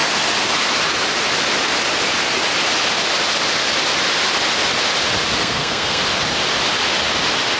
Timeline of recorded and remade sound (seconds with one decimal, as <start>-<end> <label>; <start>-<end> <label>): 0.0-5.4 recorded; 5.4-6.0 remade; 6.0-7.6 recorded